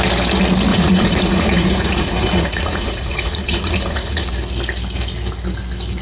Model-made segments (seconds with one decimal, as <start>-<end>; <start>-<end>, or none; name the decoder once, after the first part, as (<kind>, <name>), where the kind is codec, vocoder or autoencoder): 0.7-4.3 (vocoder, Vocos)